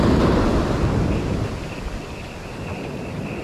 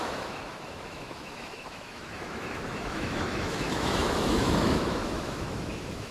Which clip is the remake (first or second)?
second